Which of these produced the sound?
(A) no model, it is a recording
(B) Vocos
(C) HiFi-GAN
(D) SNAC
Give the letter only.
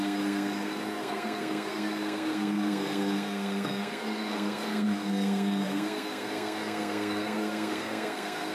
D